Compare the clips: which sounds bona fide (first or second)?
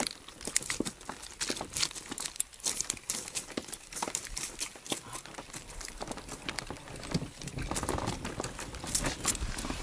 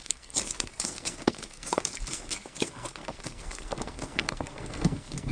first